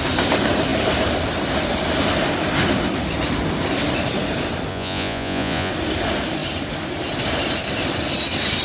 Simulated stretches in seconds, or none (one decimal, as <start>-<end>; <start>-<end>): 4.7-5.7